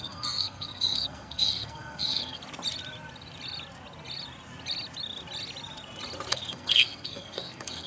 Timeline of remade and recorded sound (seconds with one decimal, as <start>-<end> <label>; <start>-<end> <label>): 0.0-2.4 remade; 2.4-6.3 recorded; 6.3-7.9 remade